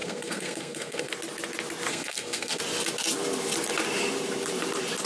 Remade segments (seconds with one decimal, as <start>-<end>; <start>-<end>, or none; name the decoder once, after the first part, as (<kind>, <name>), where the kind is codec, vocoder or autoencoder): 0.0-1.1 (codec, SNAC); 1.9-2.6